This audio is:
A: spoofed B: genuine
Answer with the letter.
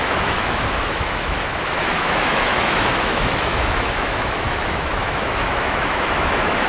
A